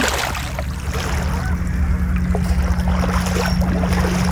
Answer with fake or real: real